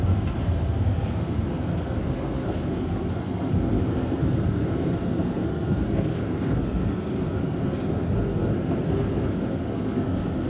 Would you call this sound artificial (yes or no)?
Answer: yes